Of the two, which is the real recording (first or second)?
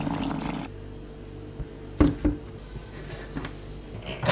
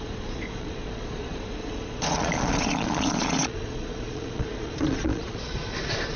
first